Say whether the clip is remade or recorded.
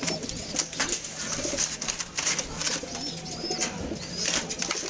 recorded